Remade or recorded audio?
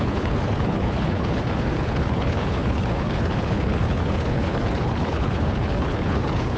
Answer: remade